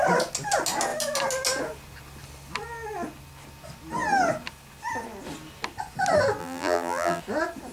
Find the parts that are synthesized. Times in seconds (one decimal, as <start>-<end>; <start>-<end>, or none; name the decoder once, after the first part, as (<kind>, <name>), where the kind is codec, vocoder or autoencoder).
6.4-7.2 (vocoder, BigVGAN v2)